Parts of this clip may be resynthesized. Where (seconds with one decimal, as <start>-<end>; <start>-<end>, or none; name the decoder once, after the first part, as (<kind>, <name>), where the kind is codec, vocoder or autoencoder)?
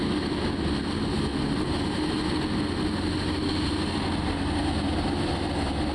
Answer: none